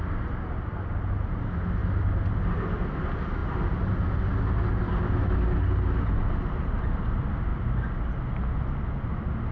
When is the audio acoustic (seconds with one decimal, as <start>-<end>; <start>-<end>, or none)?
0.0-9.5